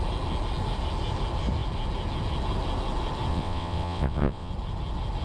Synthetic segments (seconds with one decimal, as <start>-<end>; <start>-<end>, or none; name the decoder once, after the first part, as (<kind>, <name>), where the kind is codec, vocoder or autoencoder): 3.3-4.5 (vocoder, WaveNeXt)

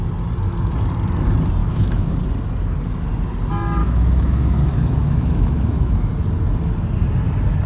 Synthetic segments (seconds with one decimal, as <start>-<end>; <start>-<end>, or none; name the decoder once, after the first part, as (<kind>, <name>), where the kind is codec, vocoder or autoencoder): 1.6-2.2 (autoencoder, DAC-VAE); 3.8-6.1

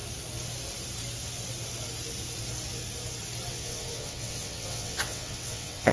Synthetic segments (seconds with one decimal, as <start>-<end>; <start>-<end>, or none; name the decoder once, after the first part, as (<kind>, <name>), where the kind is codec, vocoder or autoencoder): 3.5-5.9 (vocoder, WaveNeXt)